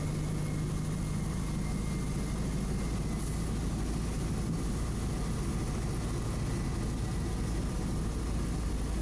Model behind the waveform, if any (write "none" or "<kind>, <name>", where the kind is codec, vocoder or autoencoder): none